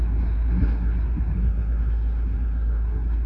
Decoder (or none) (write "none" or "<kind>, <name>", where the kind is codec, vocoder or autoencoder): codec, SNAC